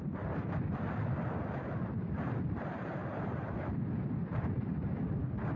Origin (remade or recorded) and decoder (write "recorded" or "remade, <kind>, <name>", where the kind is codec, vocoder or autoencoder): recorded